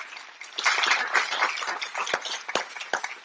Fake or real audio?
real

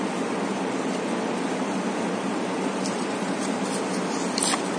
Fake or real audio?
real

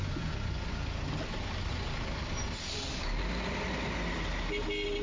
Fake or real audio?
real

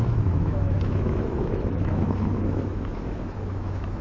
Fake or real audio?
fake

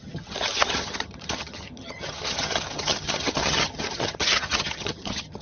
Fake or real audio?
fake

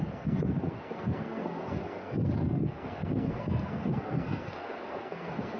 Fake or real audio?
fake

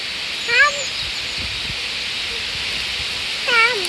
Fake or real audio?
real